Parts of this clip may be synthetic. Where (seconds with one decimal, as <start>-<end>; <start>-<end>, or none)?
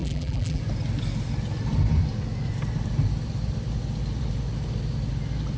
0.0-0.6